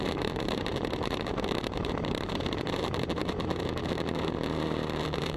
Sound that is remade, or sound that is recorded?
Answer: remade